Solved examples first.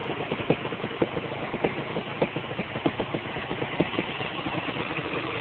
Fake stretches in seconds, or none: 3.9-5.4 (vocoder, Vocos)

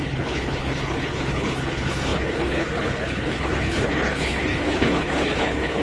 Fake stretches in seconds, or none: 0.0-5.8 (codec, HILCodec)